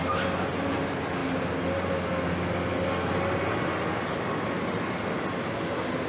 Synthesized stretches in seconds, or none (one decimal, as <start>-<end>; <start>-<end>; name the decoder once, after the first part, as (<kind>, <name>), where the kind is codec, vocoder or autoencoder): none